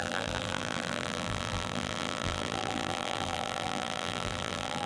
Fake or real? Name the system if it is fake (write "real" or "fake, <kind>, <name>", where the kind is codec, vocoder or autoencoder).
fake, vocoder, BigVGAN v2